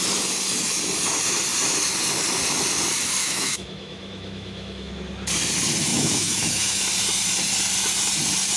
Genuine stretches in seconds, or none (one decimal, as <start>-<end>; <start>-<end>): 0.0-3.2; 4.9-5.9; 6.8-8.6